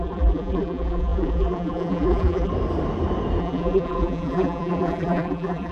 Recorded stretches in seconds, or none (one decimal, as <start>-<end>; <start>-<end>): 2.5-3.4